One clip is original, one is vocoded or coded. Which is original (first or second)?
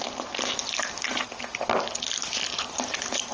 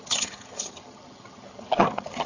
first